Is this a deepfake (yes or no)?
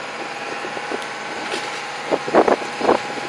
no